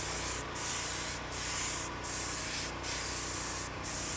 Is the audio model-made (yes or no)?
no